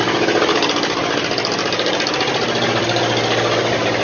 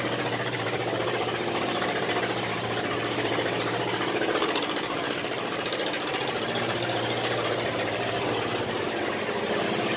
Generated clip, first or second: second